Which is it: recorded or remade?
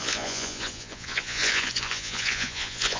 remade